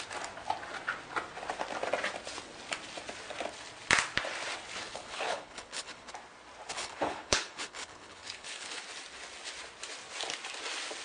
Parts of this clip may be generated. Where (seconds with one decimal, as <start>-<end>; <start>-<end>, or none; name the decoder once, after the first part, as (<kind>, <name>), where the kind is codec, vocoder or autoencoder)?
4.8-6.1 (codec, HILCodec); 6.7-8.8